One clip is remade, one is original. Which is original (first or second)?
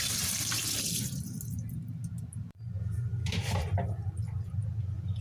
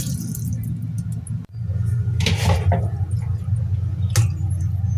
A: second